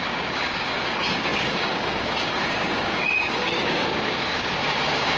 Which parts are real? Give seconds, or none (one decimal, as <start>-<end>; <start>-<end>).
none